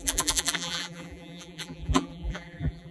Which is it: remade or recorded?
remade